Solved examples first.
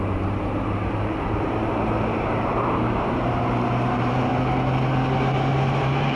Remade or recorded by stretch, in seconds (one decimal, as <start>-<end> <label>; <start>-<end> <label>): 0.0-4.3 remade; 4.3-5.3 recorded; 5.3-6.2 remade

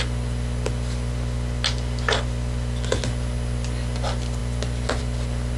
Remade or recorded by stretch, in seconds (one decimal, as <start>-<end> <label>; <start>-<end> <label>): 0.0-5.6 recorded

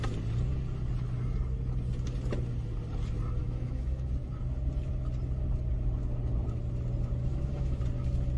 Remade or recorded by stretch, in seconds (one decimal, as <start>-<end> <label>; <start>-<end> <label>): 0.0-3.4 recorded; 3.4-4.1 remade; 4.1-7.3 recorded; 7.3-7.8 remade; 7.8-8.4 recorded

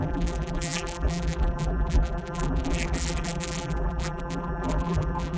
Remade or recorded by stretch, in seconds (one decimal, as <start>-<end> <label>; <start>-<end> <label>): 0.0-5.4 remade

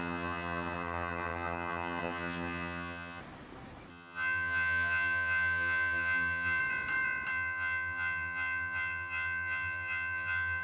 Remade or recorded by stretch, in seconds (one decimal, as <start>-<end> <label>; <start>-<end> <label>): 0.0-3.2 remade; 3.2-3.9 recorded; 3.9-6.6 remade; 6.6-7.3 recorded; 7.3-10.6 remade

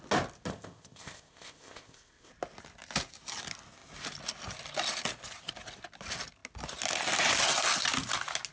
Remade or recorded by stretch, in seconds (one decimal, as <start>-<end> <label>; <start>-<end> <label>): 0.0-0.5 recorded; 0.5-2.3 remade; 2.3-8.5 recorded